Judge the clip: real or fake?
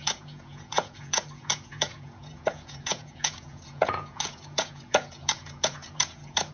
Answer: fake